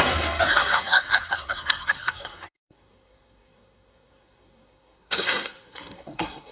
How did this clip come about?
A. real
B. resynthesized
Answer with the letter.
B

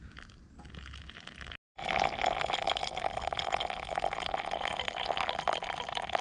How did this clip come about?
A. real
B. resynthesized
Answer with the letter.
A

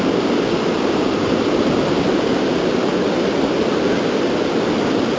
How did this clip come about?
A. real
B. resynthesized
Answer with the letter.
A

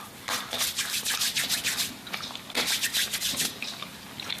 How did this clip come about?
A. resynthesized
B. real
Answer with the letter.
B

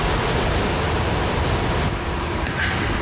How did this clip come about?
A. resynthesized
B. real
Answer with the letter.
B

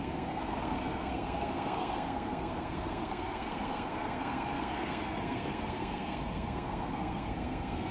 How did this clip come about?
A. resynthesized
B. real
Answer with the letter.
A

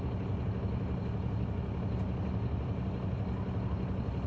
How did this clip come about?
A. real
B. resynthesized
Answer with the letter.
A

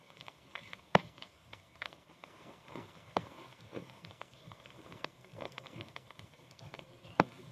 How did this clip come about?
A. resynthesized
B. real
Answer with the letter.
A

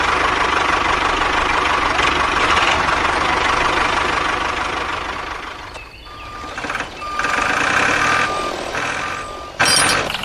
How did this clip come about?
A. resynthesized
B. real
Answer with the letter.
B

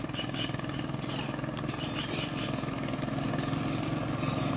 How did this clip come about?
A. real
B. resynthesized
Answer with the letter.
A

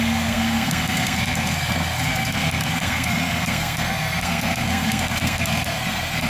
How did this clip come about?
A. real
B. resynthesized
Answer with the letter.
B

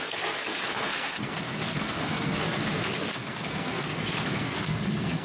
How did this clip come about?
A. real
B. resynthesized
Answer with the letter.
B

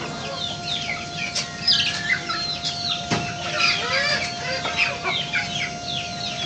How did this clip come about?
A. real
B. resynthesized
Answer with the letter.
A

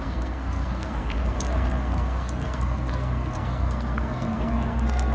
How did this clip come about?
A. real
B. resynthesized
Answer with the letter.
B